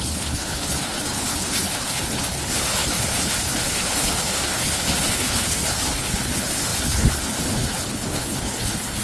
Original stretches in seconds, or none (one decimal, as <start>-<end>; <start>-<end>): none